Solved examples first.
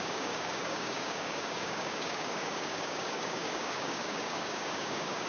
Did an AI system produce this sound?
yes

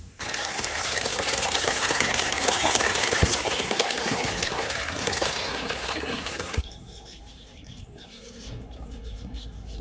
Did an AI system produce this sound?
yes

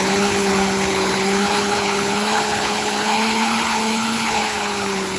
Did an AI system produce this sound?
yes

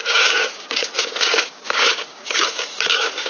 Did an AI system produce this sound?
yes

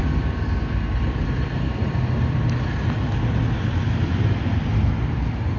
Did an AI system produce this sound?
no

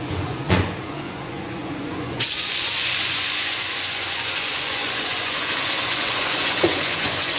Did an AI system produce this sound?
yes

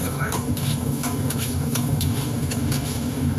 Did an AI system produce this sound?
yes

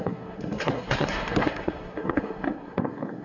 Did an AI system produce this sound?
yes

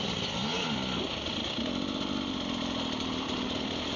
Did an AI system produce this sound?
no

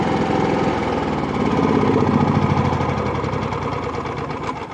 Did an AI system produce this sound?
no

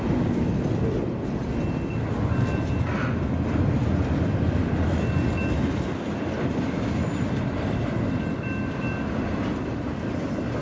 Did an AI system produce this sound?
no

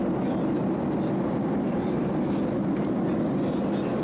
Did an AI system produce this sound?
no